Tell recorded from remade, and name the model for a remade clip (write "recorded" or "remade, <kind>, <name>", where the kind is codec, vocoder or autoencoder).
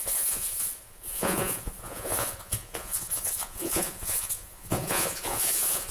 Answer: remade, vocoder, Vocos